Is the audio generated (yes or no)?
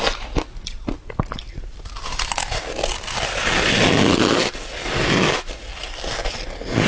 no